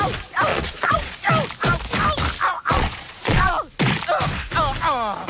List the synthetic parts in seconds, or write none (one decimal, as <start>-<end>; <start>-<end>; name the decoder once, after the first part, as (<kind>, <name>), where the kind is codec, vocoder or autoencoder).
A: 0.5-1.3 (vocoder, Vocos); 2.5-3.5